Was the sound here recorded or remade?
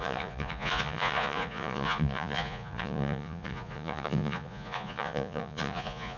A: remade